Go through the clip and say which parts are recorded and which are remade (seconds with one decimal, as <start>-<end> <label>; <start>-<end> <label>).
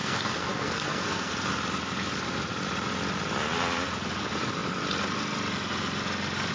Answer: 0.0-1.3 remade; 1.3-6.5 recorded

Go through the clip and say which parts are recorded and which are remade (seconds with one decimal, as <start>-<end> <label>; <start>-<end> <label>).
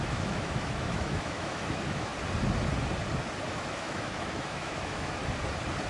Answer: 0.0-2.1 remade; 2.1-3.5 recorded; 3.5-5.2 remade; 5.2-5.9 recorded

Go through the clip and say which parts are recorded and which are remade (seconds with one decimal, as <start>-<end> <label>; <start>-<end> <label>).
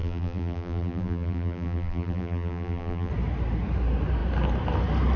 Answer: 0.0-3.1 remade; 3.1-5.2 recorded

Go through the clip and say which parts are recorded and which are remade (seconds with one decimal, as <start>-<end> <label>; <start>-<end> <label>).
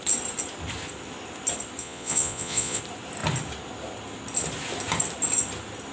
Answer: 0.0-1.8 recorded; 1.8-2.8 remade; 2.8-5.9 recorded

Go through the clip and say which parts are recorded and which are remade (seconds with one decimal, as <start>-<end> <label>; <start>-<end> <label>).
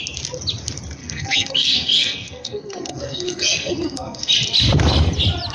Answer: 0.0-1.0 recorded; 1.0-4.3 remade; 4.3-5.5 recorded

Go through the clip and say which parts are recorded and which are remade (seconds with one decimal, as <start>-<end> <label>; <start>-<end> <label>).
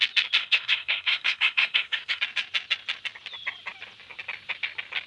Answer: 0.0-0.4 recorded; 0.4-2.2 remade; 2.2-5.1 recorded